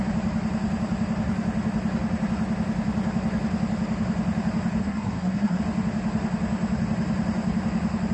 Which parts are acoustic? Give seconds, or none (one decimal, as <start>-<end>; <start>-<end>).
0.0-4.8; 5.6-8.1